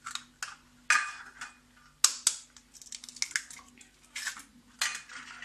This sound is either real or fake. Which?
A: real